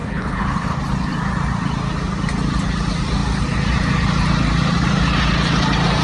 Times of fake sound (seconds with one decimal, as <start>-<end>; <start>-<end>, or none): 0.0-0.8